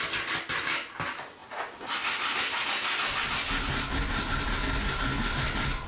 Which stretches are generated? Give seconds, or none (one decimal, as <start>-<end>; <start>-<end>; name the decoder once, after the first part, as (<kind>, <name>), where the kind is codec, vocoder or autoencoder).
none